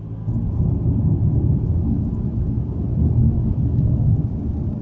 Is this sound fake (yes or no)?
no